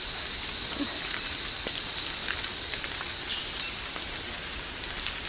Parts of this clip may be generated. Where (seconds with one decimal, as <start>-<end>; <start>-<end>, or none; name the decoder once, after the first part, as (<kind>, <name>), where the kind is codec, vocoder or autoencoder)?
2.2-3.4 (vocoder, BigVGAN v2)